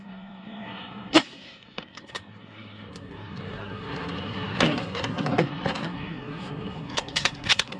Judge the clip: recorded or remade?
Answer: remade